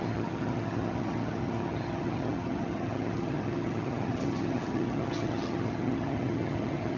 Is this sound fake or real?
fake